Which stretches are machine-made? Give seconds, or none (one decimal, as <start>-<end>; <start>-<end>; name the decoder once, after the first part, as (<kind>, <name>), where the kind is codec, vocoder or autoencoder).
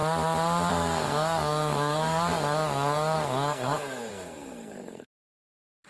0.7-5.9 (codec, SNAC)